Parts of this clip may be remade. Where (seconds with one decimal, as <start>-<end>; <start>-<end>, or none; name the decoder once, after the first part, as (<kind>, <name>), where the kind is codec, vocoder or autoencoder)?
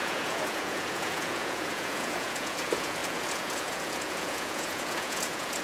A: 0.0-5.6 (vocoder, Vocos)